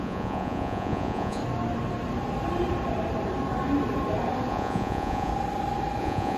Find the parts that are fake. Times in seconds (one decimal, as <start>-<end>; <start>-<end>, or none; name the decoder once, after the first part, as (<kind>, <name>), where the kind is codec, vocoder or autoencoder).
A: 0.0-1.4 (vocoder, Vocos); 4.5-5.3; 6.0-6.4